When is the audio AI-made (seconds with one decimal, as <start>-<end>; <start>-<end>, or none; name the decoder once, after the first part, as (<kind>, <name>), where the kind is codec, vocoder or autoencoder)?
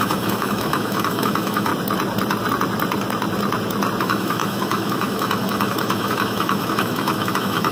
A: 0.0-1.7 (autoencoder, DAC-VAE); 4.0-7.7